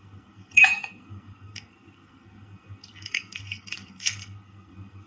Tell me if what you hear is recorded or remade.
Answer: remade